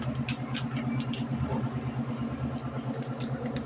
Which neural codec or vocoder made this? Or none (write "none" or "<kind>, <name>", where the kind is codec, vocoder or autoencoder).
none